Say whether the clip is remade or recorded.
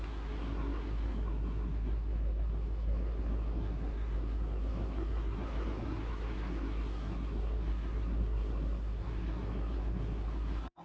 remade